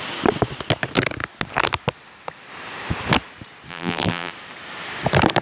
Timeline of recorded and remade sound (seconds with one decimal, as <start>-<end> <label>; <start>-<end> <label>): 0.0-3.7 recorded; 3.7-4.3 remade; 4.3-5.4 recorded